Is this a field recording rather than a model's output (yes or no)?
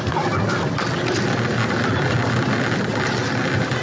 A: yes